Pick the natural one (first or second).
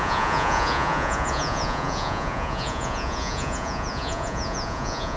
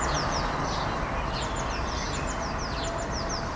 second